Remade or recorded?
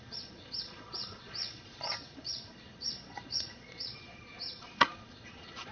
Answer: remade